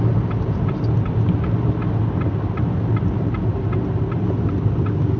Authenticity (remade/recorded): recorded